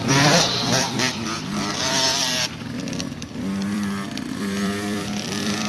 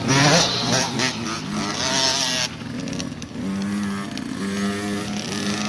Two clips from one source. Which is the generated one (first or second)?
first